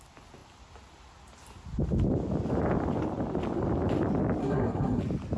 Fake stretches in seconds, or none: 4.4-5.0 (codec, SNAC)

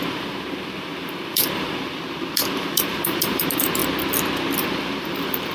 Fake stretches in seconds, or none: 0.0-3.8 (vocoder, BigVGAN v2); 4.7-5.5

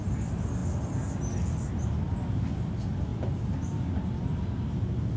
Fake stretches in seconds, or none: none

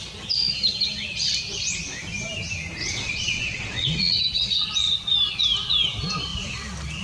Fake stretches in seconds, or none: 2.8-4.2 (vocoder, WaveNeXt)

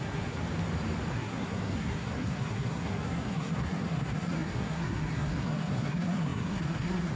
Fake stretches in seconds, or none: 0.0-0.4 (codec, SNAC); 1.1-7.2